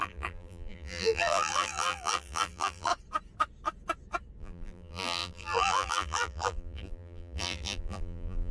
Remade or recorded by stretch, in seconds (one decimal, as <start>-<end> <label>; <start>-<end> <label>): 0.0-2.9 remade; 2.9-4.4 recorded; 4.4-8.5 remade